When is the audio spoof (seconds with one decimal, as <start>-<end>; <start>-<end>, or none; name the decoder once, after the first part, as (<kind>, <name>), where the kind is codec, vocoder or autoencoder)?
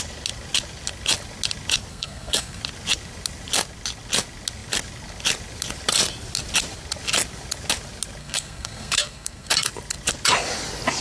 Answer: 1.9-2.6 (codec, SNAC); 8.2-9.5